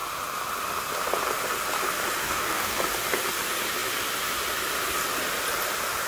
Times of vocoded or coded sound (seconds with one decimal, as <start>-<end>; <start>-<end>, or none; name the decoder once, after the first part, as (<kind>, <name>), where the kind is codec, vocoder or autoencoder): 2.2-2.8 (codec, DAC)